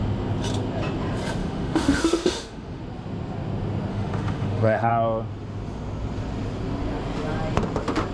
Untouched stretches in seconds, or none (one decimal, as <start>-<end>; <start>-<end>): 0.0-1.4; 2.8-3.9; 4.9-8.1